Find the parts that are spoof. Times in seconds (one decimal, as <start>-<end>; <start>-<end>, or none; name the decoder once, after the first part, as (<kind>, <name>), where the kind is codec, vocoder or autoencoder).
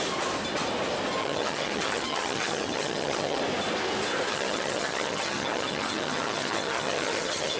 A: 1.2-3.4 (vocoder, HiFi-GAN); 4.3-7.6